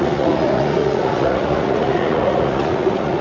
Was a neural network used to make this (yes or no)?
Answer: yes